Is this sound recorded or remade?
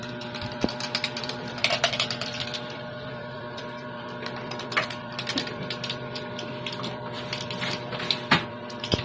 remade